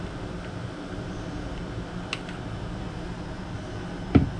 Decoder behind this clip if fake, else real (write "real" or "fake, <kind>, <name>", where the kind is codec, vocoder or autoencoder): real